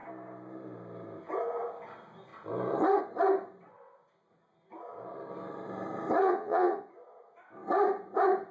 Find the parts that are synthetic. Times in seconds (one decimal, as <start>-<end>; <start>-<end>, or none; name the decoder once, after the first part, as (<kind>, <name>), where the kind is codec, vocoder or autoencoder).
6.2-6.9 (vocoder, Vocos)